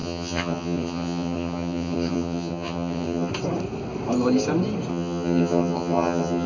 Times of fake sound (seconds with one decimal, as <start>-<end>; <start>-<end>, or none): 0.0-3.3; 4.9-6.5